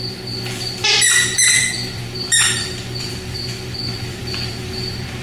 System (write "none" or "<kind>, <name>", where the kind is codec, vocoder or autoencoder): vocoder, BigVGAN v2